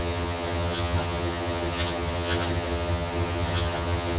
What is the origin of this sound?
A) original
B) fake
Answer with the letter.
B